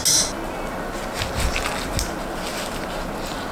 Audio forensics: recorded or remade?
recorded